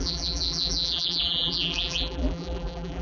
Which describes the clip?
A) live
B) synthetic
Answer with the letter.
B